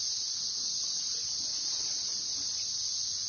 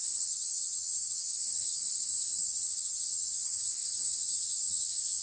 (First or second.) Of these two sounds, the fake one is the second